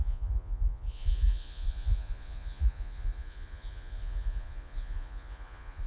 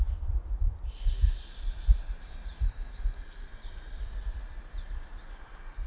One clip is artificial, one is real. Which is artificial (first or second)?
first